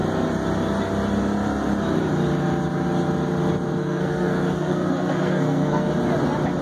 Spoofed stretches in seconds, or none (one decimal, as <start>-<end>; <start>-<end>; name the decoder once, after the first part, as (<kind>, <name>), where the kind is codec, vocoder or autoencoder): 3.8-5.9 (codec, SNAC)